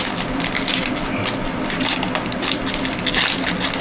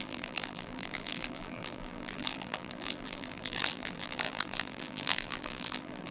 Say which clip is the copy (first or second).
second